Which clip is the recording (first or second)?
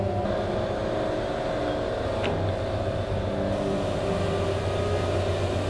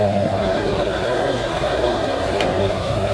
first